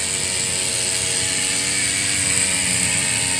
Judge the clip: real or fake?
real